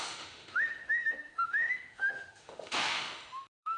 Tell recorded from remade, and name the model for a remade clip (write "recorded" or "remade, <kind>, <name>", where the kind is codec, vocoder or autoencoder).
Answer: remade, autoencoder, DAC-VAE